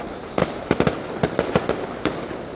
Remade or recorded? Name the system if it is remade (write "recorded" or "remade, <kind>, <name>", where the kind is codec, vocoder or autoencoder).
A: recorded